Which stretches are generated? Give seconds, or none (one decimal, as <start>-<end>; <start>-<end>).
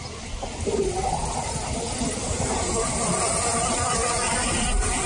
none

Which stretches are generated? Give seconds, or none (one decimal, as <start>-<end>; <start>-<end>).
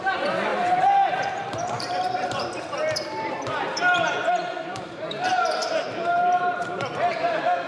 0.0-7.7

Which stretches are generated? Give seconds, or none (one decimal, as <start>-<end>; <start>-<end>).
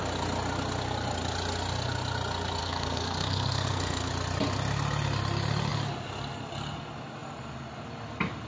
2.6-4.1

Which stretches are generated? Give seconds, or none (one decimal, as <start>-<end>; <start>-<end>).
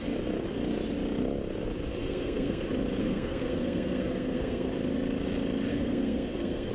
2.0-2.6; 3.0-4.7; 5.7-6.7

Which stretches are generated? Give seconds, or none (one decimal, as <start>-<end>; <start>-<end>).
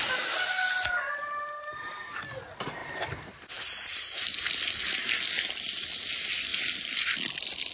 none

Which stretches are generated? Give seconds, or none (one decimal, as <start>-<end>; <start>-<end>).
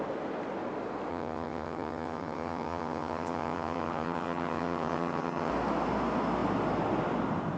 1.1-5.5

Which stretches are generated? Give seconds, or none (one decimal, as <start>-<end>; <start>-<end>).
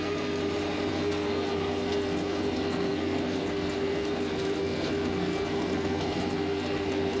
0.0-0.4; 0.9-7.2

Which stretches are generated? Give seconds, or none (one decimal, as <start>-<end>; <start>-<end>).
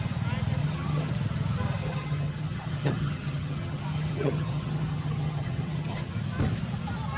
0.6-1.1; 1.8-6.1